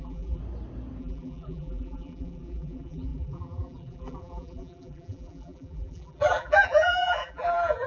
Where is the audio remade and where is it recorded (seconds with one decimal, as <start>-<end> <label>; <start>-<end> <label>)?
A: 0.0-0.4 remade; 0.4-1.0 recorded; 1.0-7.9 remade